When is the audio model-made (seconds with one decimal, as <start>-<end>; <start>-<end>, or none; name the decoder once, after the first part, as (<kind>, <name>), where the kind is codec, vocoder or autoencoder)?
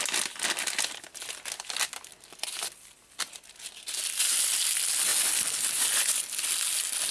none